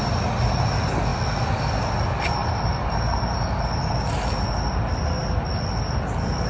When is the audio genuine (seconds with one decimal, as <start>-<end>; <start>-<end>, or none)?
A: 0.0-6.5